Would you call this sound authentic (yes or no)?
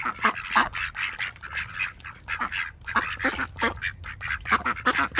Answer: yes